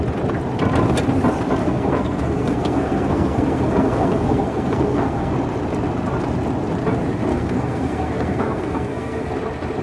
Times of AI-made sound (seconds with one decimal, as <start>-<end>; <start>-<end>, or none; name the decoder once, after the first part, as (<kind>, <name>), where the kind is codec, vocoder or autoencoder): 1.6-5.3 (codec, SNAC); 7.3-9.3